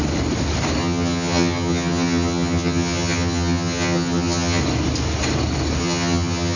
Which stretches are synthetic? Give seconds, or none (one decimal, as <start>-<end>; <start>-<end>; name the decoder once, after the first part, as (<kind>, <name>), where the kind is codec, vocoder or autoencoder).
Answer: 0.8-4.6 (vocoder, HiFi-GAN); 5.8-6.6